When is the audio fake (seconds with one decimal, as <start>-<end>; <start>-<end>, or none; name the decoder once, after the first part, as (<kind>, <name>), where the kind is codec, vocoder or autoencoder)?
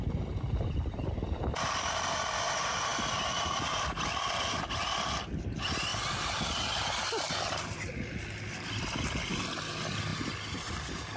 none